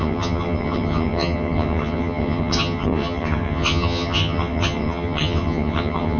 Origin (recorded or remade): remade